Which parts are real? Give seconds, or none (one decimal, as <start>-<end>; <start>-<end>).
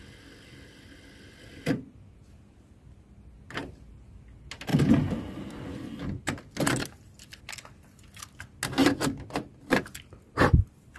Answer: 0.0-11.0